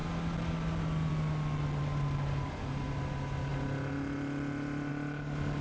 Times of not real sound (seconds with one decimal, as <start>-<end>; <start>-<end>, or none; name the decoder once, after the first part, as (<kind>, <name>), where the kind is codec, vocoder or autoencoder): none